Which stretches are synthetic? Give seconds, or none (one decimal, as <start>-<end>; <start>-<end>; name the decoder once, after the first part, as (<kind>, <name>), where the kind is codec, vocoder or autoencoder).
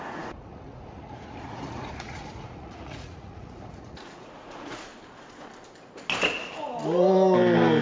0.0-4.9 (vocoder, Vocos)